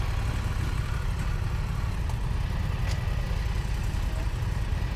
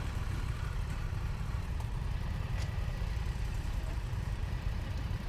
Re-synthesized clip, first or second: second